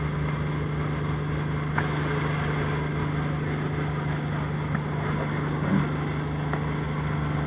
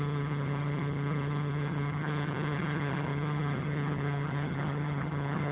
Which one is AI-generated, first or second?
second